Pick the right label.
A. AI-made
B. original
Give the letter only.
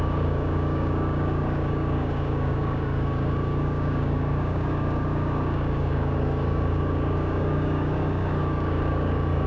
A